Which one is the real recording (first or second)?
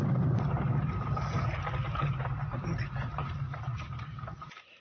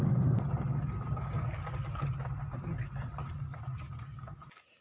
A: second